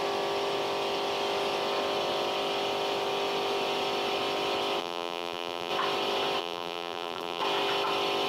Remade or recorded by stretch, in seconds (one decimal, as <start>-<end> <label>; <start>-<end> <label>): 0.0-4.8 recorded; 4.8-5.7 remade; 5.7-6.4 recorded; 6.4-7.4 remade; 7.4-8.3 recorded